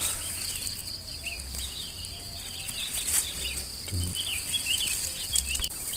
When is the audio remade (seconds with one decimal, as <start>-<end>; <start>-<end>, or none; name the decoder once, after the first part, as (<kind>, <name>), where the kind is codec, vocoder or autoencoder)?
none